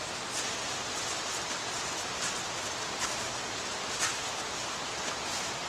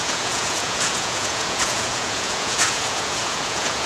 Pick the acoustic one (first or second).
first